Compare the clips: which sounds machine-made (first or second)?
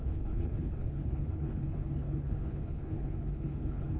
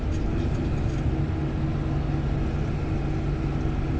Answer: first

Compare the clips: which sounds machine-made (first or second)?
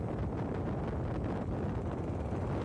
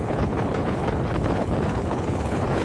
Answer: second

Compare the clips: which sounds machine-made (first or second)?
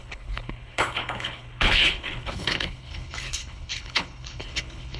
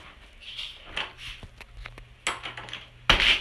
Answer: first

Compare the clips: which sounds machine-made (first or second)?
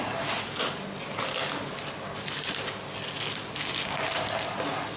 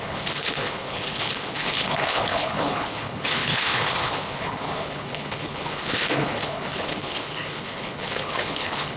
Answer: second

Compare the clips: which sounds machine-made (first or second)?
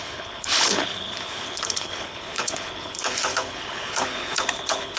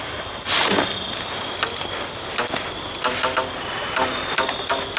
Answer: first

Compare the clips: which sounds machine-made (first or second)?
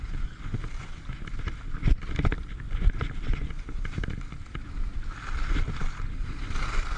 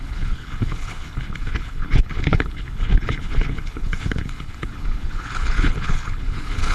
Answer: second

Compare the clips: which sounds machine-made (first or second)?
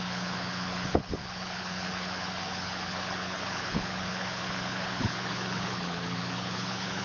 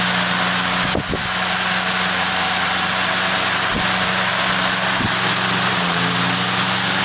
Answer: first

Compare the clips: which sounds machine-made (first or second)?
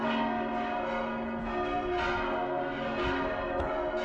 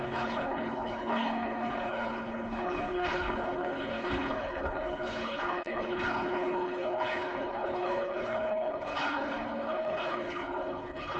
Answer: second